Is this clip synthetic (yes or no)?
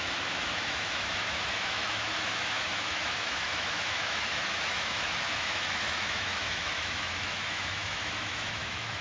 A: yes